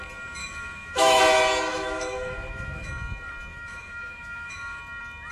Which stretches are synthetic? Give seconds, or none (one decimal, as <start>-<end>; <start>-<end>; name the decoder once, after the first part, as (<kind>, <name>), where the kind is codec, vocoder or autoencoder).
0.4-1.2 (autoencoder, DAC-VAE); 1.7-2.9; 3.5-4.8